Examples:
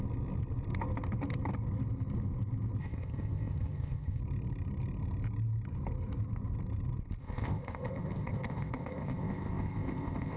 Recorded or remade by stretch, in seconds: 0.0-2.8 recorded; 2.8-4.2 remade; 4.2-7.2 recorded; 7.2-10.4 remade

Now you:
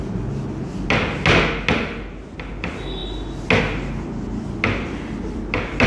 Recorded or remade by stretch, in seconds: 0.0-5.9 recorded